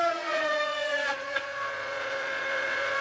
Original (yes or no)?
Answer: no